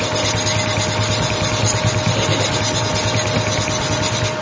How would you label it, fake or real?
real